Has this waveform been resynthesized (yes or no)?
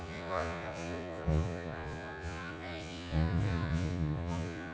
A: yes